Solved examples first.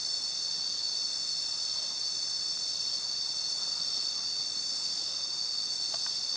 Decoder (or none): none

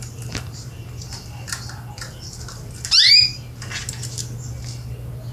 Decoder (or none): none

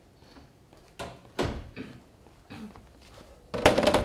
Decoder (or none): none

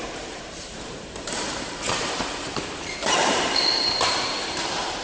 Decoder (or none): vocoder, BigVGAN v2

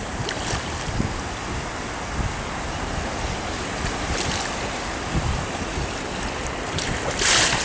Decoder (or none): none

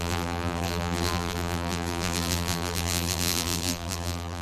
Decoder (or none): vocoder, BigVGAN v2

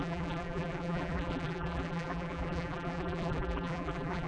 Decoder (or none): vocoder, BigVGAN v2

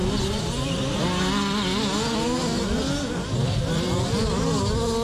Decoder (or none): none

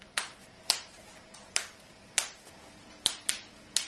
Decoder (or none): vocoder, BigVGAN v2